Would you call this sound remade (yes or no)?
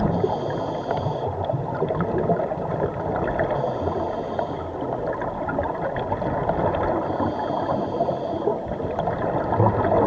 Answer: no